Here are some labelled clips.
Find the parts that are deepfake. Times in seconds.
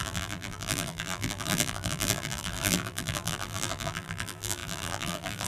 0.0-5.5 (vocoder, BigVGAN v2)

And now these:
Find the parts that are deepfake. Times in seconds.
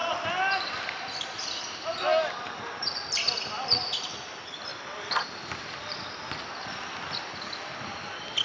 none